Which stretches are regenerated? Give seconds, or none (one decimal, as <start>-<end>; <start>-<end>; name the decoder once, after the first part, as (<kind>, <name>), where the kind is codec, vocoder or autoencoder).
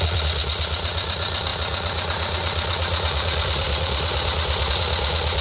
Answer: 0.0-5.4 (vocoder, Vocos)